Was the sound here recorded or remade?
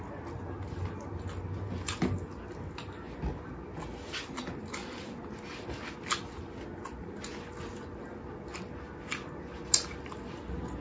recorded